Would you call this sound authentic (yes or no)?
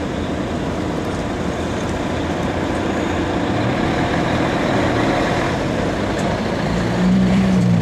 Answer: no